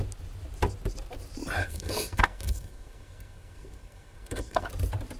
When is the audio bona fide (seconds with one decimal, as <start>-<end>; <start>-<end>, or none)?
0.0-1.6; 4.7-5.2